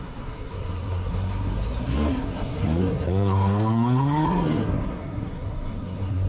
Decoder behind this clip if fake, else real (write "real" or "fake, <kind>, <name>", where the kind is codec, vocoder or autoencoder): fake, codec, SNAC